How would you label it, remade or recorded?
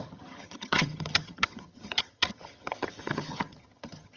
remade